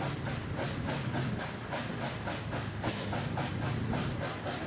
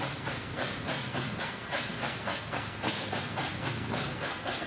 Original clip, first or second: first